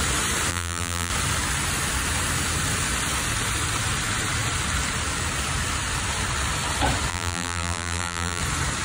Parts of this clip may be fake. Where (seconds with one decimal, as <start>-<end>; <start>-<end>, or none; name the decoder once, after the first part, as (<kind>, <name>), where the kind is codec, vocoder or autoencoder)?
0.5-1.1 (vocoder, BigVGAN v2); 7.1-8.4